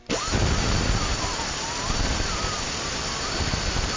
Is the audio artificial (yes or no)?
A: no